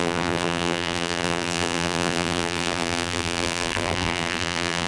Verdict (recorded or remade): remade